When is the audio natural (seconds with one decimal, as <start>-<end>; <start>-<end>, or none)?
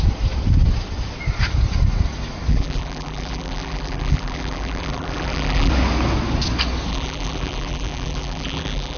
0.0-2.5; 5.7-6.9